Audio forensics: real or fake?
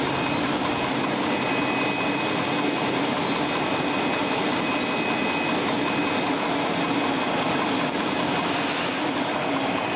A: real